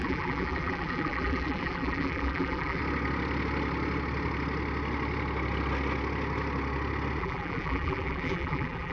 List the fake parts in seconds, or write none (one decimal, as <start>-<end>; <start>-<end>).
0.0-2.8; 7.2-8.9